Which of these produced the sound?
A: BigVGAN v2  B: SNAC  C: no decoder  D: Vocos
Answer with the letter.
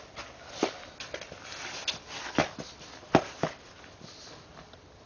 C